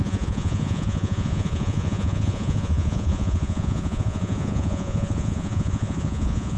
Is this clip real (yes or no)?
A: no